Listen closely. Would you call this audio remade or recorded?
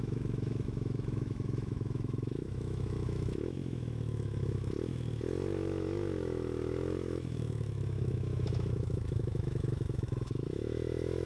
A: remade